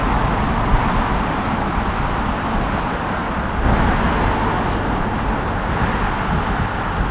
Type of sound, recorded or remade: recorded